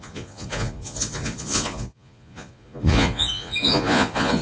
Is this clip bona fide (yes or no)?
no